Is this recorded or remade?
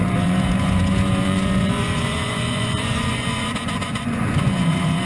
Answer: remade